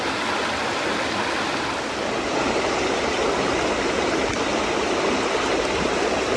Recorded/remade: recorded